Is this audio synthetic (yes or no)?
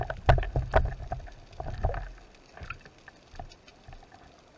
no